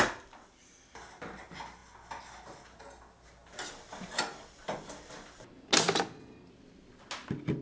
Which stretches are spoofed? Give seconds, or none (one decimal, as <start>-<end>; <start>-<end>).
none